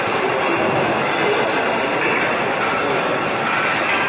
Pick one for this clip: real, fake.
real